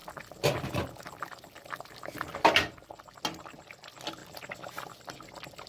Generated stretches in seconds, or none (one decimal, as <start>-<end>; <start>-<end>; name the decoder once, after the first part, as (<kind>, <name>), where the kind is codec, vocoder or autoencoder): none